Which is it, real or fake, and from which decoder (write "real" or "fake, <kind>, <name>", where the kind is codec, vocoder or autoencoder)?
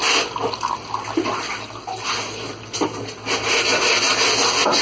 real